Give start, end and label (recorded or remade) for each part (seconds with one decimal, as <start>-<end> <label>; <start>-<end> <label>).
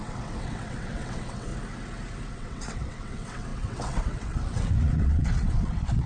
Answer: 0.0-1.5 remade; 1.5-2.3 recorded; 2.3-6.1 remade